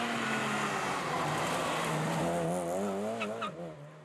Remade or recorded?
recorded